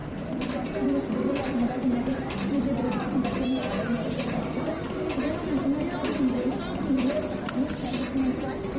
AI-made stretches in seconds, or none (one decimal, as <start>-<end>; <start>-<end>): 0.0-5.1